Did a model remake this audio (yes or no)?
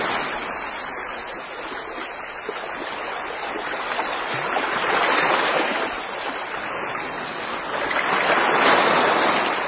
no